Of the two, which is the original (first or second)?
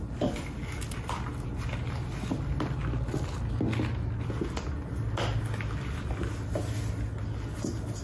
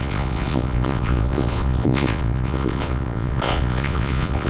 first